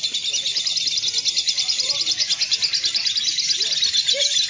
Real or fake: real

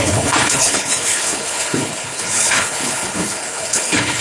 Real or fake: fake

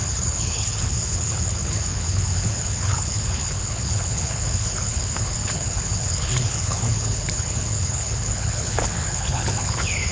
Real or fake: fake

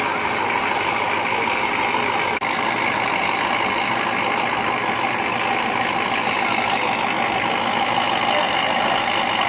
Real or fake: real